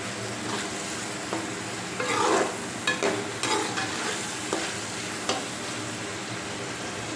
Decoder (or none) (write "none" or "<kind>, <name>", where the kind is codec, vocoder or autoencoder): none